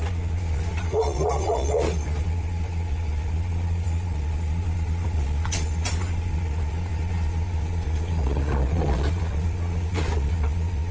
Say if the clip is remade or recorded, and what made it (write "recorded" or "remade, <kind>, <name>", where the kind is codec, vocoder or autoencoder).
remade, vocoder, Vocos